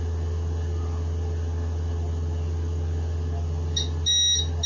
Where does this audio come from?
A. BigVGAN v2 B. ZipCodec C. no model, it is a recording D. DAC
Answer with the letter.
C